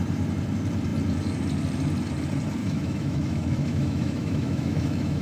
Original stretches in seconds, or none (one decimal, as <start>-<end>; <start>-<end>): 0.0-2.6